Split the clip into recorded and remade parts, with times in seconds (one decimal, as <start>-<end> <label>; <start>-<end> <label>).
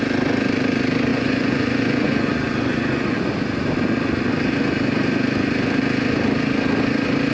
0.0-1.1 recorded; 1.1-3.3 remade; 3.3-7.3 recorded